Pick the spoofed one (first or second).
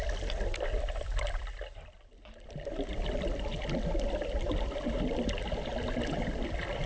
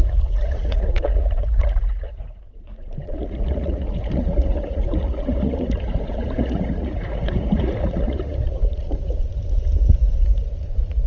second